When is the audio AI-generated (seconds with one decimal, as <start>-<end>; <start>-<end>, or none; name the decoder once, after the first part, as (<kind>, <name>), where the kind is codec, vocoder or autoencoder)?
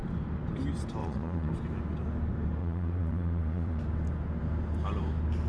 1.0-1.5 (vocoder, Vocos); 2.6-3.8